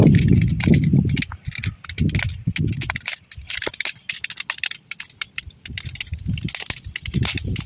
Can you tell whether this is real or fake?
real